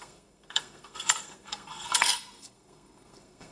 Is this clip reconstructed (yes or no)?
yes